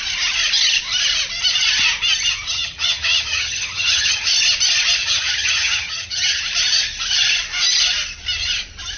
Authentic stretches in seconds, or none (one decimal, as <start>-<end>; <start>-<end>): 0.0-2.5; 4.3-5.0; 6.4-9.0